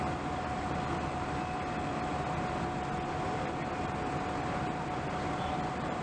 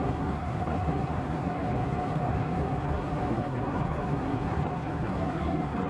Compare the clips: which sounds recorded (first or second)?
first